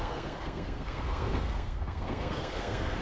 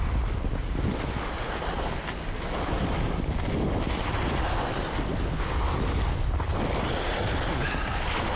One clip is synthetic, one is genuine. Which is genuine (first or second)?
second